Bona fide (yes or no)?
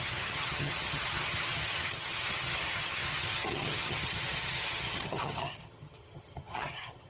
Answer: no